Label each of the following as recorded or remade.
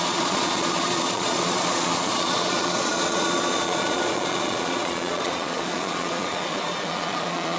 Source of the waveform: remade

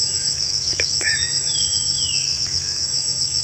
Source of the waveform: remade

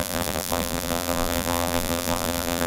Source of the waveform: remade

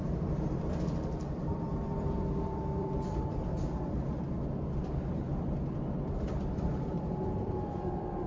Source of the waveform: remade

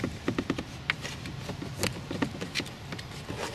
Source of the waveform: recorded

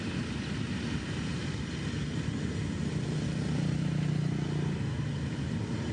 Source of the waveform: recorded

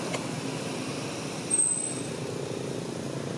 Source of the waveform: recorded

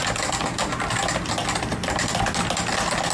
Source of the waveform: recorded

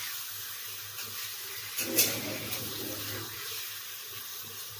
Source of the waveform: recorded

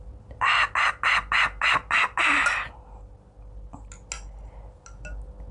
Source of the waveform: recorded